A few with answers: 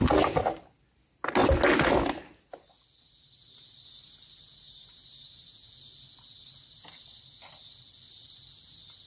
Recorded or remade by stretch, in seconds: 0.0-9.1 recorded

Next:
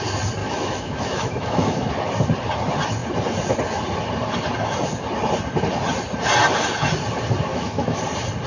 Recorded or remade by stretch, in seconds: 0.0-0.4 recorded; 0.4-1.9 remade; 1.9-7.5 recorded; 7.5-8.0 remade; 8.0-8.5 recorded

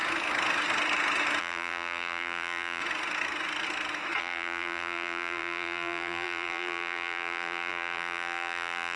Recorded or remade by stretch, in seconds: 0.0-1.4 recorded; 1.4-2.8 remade; 2.8-4.2 recorded; 4.2-9.0 remade

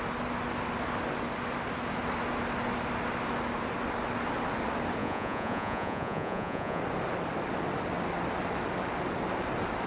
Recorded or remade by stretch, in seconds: 0.0-5.0 recorded; 5.0-6.8 remade; 6.8-9.9 recorded

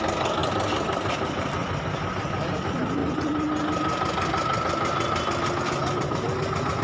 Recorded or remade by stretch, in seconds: 0.0-6.8 recorded

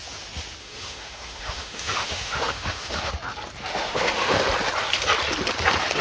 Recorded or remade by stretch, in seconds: 0.0-0.6 recorded; 0.6-3.1 remade; 3.1-3.7 recorded; 3.7-4.4 remade; 4.4-6.0 recorded